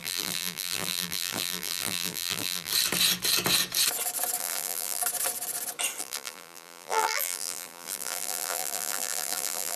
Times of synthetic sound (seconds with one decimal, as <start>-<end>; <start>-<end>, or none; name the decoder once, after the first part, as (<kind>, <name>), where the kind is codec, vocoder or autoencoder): 0.0-2.7 (vocoder, BigVGAN v2); 4.4-5.0; 6.0-9.8